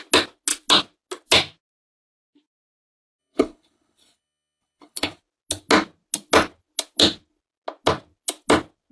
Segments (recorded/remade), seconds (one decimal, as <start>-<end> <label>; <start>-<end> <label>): 0.0-3.2 recorded; 3.2-5.2 remade; 5.2-8.9 recorded